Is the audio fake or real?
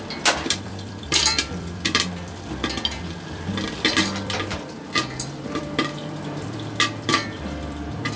fake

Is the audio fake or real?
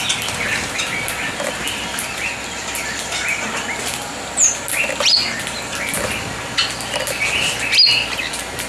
real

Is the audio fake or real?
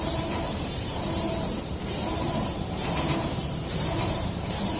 fake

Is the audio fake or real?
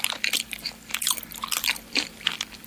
fake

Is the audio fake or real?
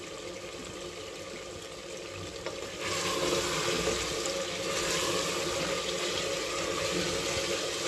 real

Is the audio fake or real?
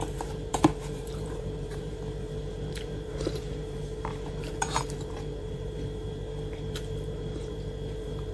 fake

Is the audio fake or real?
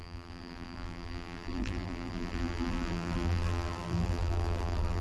fake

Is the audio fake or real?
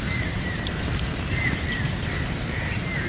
fake